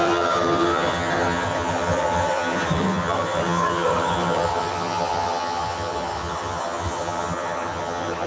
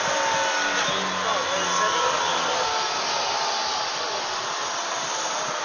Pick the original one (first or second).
second